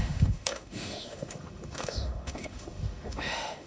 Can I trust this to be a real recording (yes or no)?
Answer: no